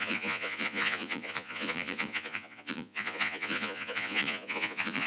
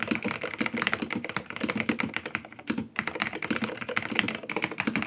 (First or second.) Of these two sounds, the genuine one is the second